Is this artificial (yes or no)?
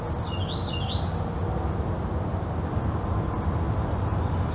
no